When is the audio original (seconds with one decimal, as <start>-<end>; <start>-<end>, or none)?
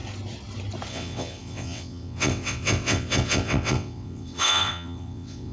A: 0.0-0.9